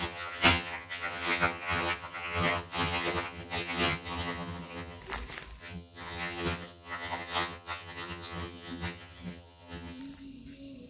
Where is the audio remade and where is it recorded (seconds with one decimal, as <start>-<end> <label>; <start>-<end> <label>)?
0.0-5.0 remade; 5.0-5.6 recorded; 5.6-10.0 remade; 10.0-10.9 recorded